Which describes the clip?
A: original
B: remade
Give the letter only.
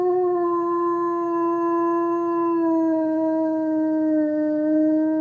A